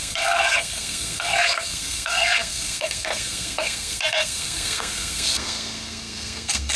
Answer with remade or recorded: remade